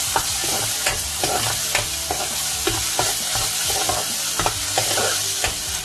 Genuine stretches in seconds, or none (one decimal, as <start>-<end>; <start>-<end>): 0.0-5.8